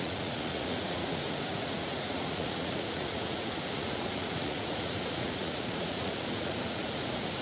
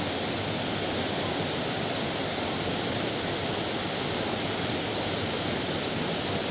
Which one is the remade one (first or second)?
first